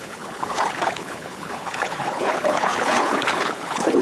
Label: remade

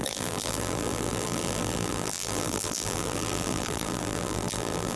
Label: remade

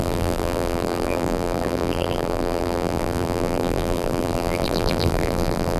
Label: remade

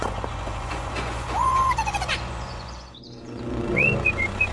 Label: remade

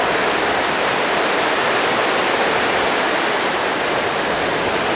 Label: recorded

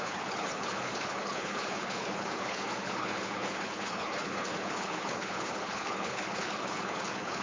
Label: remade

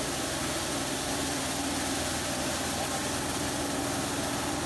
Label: recorded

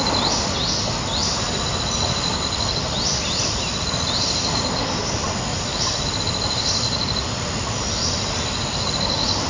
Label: recorded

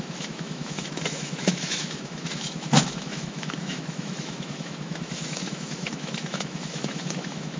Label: remade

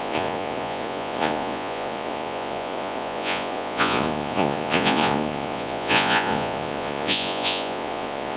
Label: remade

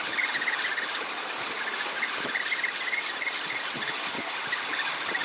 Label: remade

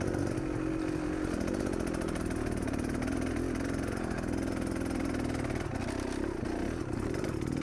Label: recorded